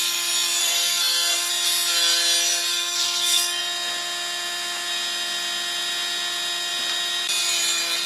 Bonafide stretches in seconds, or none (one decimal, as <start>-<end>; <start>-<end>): 0.0-0.6; 1.5-2.7; 3.6-8.1